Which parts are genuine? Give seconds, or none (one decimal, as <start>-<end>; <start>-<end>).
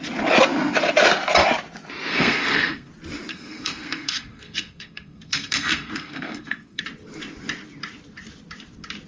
0.0-2.1; 2.9-3.3; 6.8-9.1